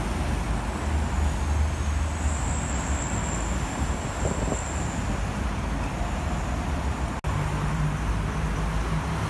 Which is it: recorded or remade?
recorded